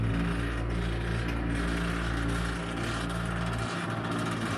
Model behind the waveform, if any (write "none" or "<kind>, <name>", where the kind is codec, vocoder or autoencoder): none